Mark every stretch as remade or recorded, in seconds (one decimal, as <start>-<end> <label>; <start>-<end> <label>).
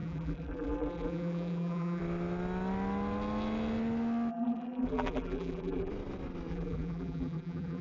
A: 0.0-2.0 remade; 2.0-4.3 recorded; 4.3-5.9 remade; 5.9-6.5 recorded; 6.5-7.8 remade